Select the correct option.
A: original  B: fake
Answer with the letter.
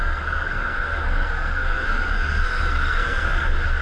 B